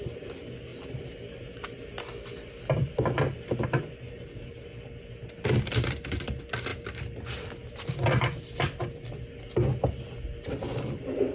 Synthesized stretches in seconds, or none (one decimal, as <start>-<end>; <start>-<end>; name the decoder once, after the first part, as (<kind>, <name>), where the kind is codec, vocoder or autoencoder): none